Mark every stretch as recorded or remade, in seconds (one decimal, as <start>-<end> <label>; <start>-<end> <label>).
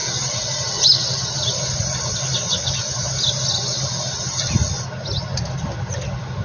0.0-6.4 recorded